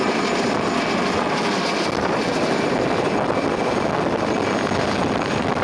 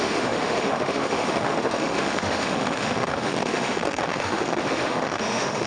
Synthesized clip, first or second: second